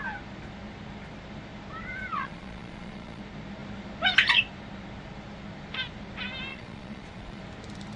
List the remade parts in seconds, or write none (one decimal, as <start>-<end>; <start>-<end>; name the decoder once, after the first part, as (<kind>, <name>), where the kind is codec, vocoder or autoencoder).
2.1-3.2 (vocoder, Vocos); 6.5-7.4